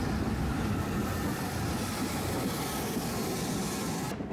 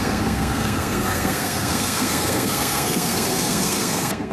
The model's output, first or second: second